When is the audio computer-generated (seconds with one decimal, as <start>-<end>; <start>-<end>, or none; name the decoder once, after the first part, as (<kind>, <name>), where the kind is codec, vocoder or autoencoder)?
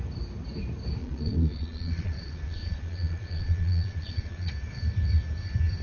1.0-4.5 (vocoder, Vocos)